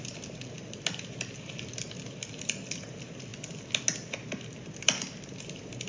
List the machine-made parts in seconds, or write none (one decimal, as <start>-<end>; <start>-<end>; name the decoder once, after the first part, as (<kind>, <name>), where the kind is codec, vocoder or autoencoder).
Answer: none